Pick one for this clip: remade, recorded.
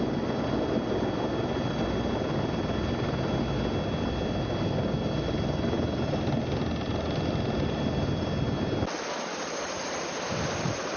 recorded